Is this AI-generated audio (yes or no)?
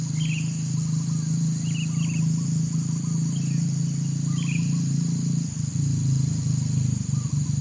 no